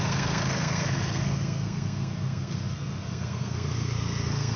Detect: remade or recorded remade